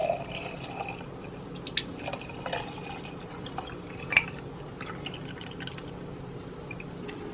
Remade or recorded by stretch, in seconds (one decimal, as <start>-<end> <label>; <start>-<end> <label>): 0.0-7.3 recorded